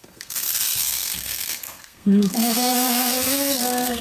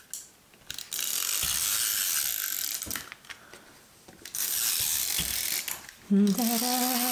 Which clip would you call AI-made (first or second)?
first